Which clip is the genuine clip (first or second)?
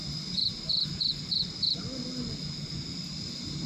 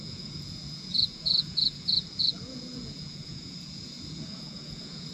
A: first